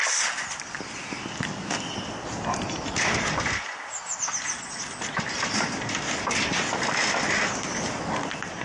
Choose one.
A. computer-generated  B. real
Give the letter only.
B